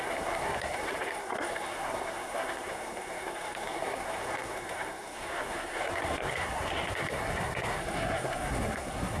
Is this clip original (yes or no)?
no